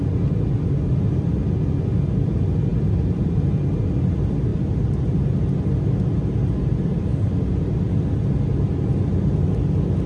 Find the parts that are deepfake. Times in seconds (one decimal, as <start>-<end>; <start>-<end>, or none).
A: 4.5-5.0